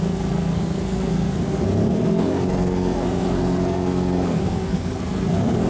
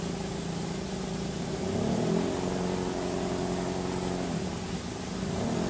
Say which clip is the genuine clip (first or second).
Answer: second